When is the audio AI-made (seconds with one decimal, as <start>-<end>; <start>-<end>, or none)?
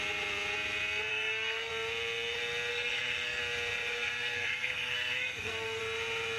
1.1-1.7; 2.7-3.4; 3.9-5.8